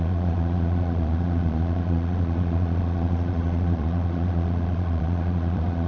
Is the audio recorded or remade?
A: remade